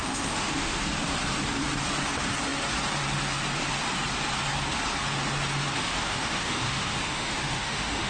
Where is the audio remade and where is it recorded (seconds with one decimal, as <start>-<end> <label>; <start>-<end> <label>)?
0.0-0.8 remade; 0.8-5.7 recorded; 5.7-8.1 remade